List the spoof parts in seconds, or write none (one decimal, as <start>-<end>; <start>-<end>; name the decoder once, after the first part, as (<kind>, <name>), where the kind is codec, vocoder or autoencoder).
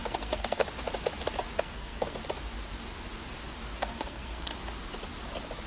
0.0-0.6 (codec, SNAC); 1.6-2.2; 3.8-4.5